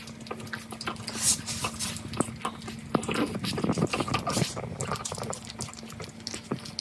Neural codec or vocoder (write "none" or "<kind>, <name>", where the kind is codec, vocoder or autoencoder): none